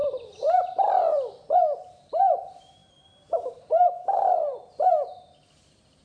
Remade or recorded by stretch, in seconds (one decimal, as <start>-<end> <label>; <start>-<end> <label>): 0.0-6.0 remade